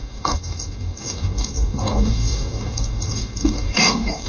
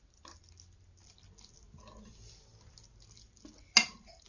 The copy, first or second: first